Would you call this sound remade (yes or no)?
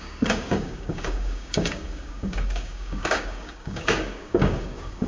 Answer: yes